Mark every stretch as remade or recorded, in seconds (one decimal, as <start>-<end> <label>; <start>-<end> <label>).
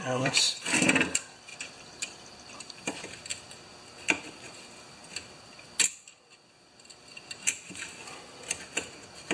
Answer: 0.0-1.5 remade; 1.5-2.6 recorded; 2.6-3.3 remade; 3.3-4.2 recorded; 4.2-5.0 remade; 5.0-7.7 recorded; 7.7-9.3 remade